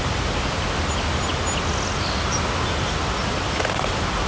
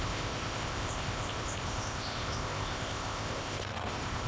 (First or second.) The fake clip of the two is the second